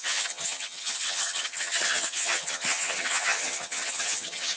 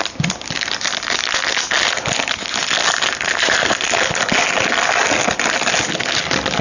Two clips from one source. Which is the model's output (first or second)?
first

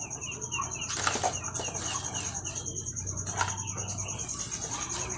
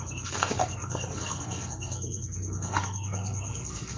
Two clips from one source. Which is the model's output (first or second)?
second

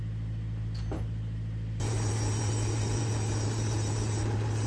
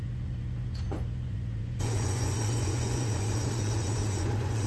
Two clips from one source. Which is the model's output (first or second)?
second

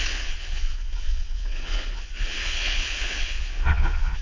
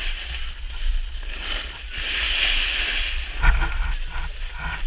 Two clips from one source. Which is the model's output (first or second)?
first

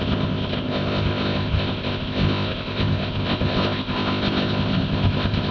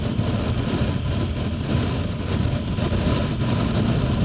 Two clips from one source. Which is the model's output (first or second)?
first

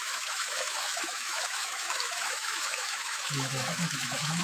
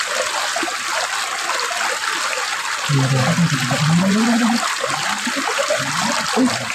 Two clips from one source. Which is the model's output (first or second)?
first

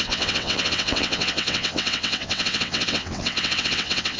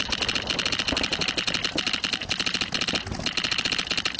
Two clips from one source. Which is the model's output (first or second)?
first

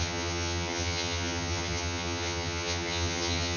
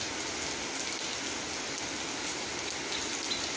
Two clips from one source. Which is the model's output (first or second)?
first